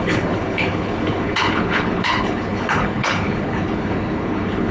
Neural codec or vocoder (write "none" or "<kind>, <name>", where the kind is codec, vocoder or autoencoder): codec, HILCodec